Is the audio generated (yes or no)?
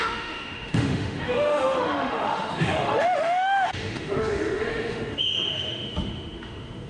yes